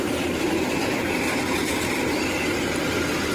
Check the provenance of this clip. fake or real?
real